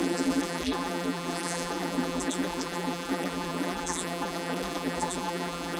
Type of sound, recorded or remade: remade